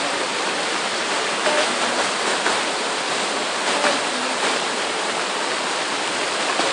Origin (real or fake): real